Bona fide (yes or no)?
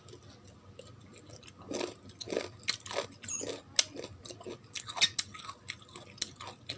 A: yes